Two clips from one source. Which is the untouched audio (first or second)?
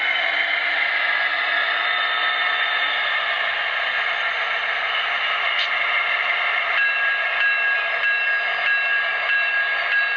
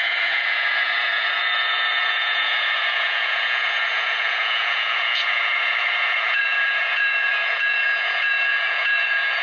first